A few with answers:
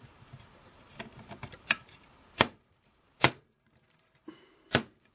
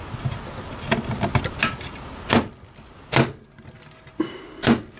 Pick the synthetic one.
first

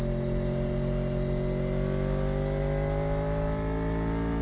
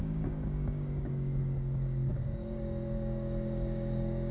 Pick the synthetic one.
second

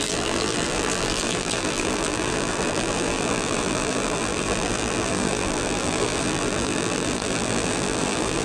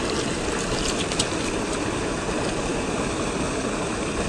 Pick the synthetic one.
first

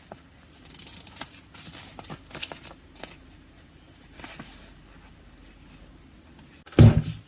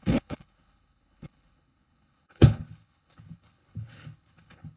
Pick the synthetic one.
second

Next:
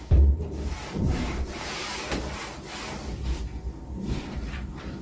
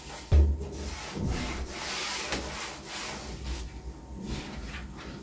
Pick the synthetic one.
first